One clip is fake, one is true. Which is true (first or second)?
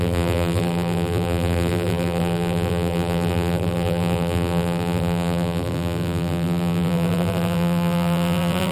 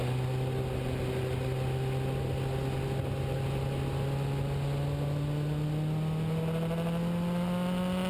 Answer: second